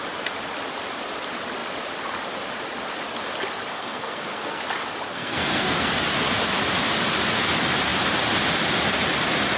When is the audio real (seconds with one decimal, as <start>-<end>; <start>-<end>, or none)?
0.0-3.7; 4.6-5.1; 5.9-9.6